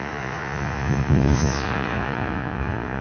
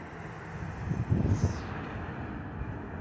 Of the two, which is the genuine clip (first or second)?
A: second